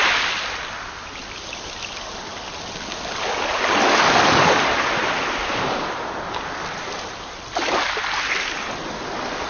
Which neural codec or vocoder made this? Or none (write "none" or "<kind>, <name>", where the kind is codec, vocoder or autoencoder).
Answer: none